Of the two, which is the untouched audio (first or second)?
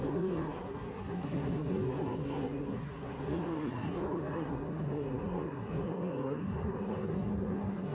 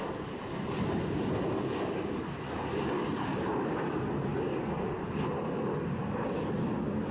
second